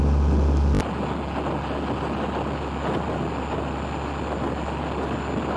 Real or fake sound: real